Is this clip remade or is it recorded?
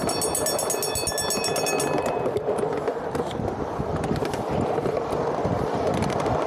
recorded